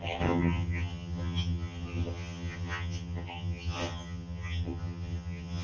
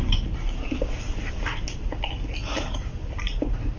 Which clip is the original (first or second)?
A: second